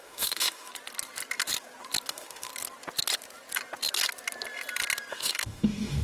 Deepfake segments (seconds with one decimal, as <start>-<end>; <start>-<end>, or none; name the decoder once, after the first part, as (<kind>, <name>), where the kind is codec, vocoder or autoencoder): 0.0-0.7 (autoencoder, DAC-VAE); 2.1-2.5; 5.1-6.0